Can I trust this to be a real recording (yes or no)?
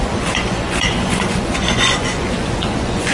no